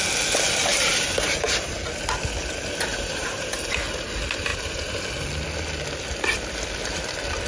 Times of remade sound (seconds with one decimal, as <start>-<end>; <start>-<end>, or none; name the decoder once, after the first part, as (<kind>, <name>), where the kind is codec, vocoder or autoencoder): 0.7-1.7 (vocoder, BigVGAN v2); 2.9-3.7; 4.5-5.0